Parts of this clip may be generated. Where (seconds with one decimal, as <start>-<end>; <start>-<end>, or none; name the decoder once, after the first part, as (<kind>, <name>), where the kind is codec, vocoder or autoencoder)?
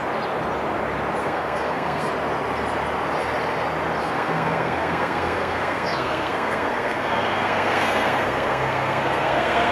1.2-2.1 (codec, SNAC); 4.0-9.7